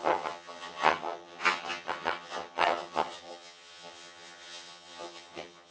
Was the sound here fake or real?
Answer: fake